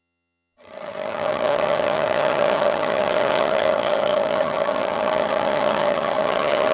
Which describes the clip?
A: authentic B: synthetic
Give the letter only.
B